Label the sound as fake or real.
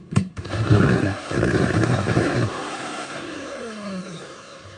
fake